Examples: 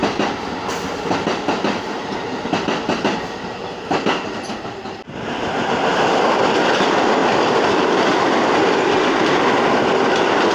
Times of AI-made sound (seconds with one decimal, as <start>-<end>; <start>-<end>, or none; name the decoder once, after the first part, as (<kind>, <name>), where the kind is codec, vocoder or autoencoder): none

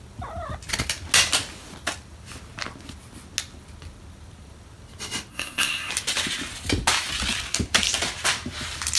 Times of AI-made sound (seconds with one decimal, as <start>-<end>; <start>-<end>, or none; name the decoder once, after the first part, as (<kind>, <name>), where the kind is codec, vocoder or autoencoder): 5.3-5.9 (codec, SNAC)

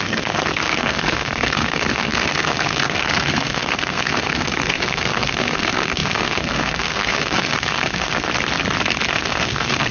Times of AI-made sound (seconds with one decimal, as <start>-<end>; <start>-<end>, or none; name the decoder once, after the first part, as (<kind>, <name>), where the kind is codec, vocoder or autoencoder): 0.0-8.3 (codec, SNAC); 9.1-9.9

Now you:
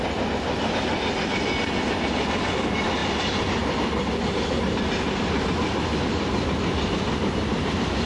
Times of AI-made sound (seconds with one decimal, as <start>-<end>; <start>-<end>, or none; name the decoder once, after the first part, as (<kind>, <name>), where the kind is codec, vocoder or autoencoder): none

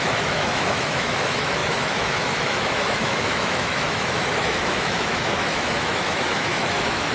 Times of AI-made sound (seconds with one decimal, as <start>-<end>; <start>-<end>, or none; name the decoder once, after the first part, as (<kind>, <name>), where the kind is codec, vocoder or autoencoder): 0.0-7.1 (autoencoder, DAC-VAE)

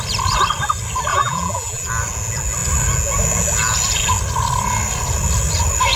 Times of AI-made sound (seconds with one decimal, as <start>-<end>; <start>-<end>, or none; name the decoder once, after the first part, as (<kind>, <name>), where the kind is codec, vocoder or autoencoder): 1.1-1.9 (vocoder, BigVGAN v2)

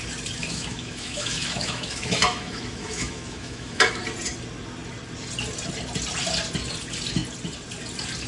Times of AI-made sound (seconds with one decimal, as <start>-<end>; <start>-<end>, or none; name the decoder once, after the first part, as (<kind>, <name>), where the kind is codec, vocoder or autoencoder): 0.4-4.0 (autoencoder, DAC-VAE)

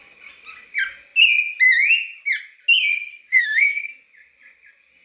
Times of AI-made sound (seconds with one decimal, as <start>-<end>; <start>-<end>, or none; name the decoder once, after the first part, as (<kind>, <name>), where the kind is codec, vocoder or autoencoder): 3.3-3.9 (codec, SNAC)